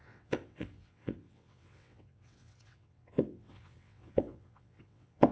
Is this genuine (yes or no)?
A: no